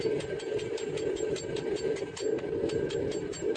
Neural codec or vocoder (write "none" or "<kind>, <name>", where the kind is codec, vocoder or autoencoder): none